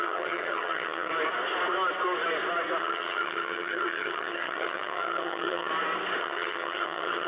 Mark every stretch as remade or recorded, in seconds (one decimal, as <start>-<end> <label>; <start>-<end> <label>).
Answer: 0.0-1.1 remade; 1.1-2.8 recorded; 2.8-5.7 remade; 5.7-6.2 recorded; 6.2-7.3 remade

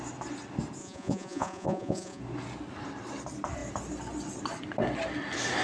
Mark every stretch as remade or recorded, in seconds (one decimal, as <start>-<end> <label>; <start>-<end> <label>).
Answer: 0.0-0.8 recorded; 0.8-2.2 remade; 2.2-5.6 recorded

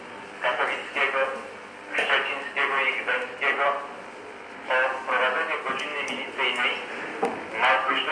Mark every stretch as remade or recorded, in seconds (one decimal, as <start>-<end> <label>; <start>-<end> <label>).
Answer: 0.0-8.1 recorded

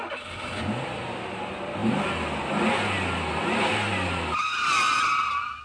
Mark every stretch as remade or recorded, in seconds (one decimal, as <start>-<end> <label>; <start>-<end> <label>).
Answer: 0.0-5.6 recorded

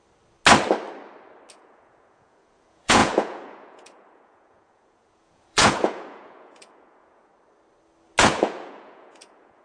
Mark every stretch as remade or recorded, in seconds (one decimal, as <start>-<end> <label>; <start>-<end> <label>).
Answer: 0.0-1.5 recorded; 1.5-7.3 remade; 7.3-8.2 recorded; 8.2-9.6 remade